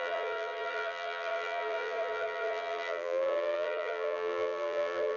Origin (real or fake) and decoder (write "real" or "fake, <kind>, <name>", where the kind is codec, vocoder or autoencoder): fake, vocoder, BigVGAN v2